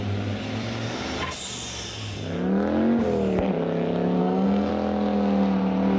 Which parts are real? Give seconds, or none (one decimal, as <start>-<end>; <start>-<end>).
0.0-4.2; 4.7-6.0